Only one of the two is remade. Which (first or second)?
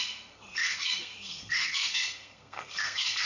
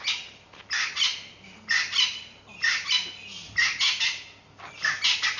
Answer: first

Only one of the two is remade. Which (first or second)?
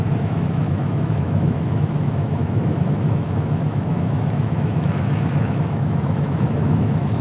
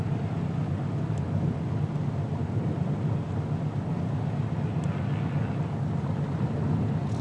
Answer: first